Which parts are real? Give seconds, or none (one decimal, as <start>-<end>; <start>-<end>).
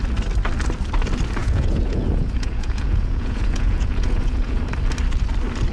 0.0-1.4; 4.6-5.7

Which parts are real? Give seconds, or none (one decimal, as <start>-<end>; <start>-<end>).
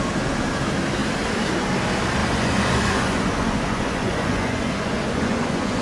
0.0-2.2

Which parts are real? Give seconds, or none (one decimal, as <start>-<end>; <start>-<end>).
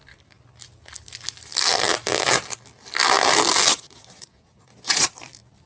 0.0-3.7; 5.2-5.7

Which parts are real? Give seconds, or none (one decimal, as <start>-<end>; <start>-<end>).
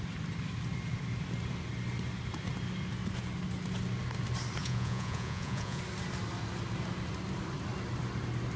0.0-4.6; 5.8-8.6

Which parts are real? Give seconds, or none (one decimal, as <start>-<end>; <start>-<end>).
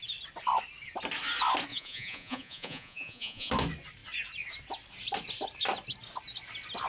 0.0-1.7; 3.5-6.9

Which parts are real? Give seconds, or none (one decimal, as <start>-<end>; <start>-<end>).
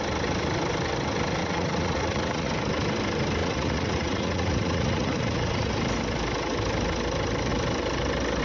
0.0-1.4; 2.5-3.4; 5.7-8.4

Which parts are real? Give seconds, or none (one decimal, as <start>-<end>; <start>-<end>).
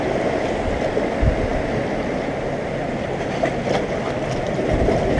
0.0-5.2